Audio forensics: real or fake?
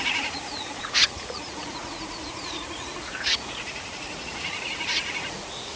fake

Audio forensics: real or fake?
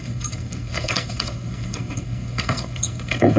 fake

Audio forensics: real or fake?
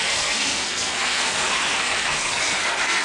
fake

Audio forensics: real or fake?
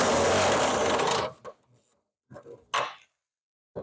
real